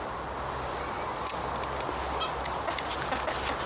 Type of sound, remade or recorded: recorded